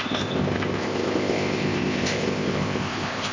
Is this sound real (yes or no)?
no